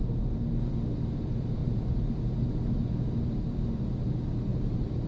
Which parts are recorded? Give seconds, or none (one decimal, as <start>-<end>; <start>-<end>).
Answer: 0.0-1.6; 2.5-4.5